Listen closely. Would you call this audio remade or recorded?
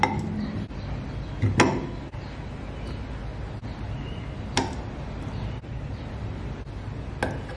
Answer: recorded